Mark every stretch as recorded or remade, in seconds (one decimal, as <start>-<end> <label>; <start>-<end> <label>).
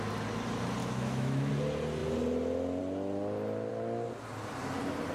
0.0-0.8 recorded; 0.8-1.5 remade; 1.5-5.1 recorded